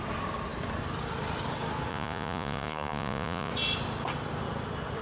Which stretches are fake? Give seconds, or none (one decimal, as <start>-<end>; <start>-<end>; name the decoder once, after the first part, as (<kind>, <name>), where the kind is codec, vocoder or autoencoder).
1.9-3.5 (vocoder, Vocos)